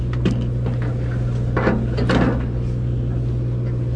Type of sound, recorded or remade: recorded